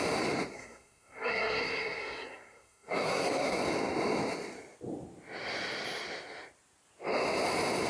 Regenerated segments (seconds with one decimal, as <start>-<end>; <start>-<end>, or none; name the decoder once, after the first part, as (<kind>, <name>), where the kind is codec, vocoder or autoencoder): 0.5-3.6 (codec, SNAC)